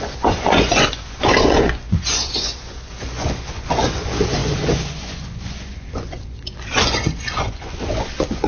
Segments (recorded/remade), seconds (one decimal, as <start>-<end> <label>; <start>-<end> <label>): 0.0-8.5 remade

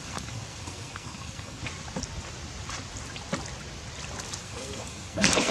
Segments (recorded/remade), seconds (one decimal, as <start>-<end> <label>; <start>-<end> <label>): 0.0-1.6 remade; 1.6-4.4 recorded; 4.4-5.5 remade

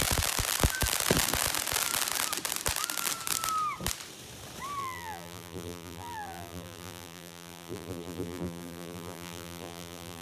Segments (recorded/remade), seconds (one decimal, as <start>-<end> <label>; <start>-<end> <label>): 0.0-4.8 recorded; 4.8-10.2 remade

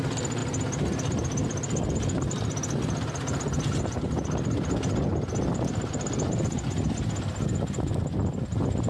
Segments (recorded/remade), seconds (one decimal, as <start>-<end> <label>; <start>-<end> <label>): 0.0-8.9 recorded

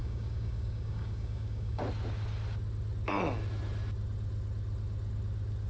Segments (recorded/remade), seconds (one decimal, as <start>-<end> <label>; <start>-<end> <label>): 0.0-1.8 remade; 1.8-5.7 recorded

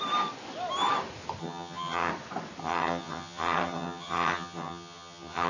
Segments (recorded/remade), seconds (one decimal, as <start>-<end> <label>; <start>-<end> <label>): 0.0-1.4 recorded; 1.4-2.1 remade; 2.1-2.6 recorded; 2.6-5.5 remade

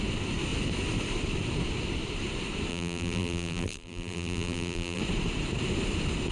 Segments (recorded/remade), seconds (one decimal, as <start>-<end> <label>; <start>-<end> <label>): 0.0-2.7 recorded; 2.7-5.0 remade; 5.0-6.3 recorded

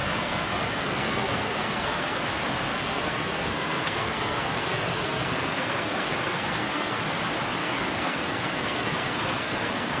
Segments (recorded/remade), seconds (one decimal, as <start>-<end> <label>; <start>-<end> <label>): 0.0-2.2 remade; 2.2-2.7 recorded; 2.7-7.0 remade; 7.0-7.6 recorded; 7.6-10.0 remade